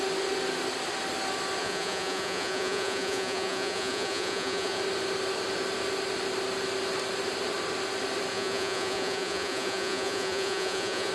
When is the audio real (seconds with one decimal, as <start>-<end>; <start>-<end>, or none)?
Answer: 0.0-1.6; 4.8-8.3